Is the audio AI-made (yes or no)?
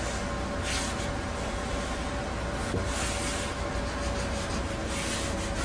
no